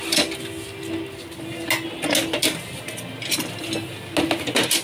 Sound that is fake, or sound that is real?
real